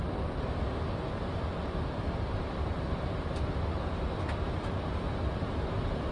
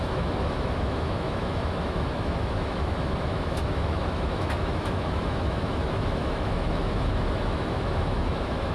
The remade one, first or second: second